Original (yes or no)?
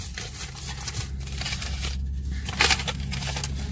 yes